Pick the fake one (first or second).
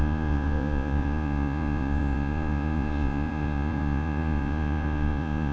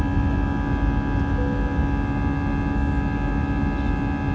first